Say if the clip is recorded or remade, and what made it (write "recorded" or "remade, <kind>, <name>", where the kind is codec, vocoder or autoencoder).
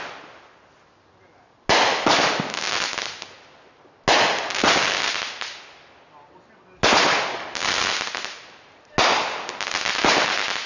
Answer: recorded